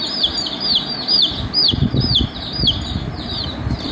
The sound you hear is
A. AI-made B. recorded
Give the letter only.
A